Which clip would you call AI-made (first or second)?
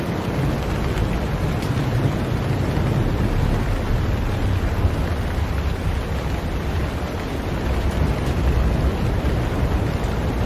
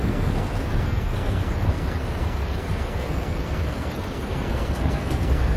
second